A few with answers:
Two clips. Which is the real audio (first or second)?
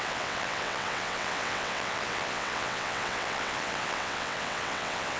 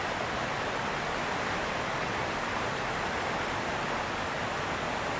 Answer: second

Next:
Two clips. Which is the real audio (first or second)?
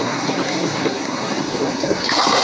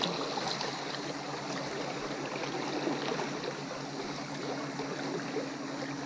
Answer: second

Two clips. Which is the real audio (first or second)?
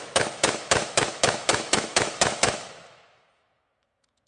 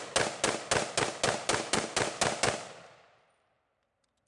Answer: second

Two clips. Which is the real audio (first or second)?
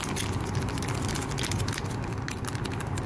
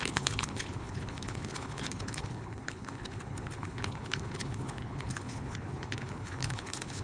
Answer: first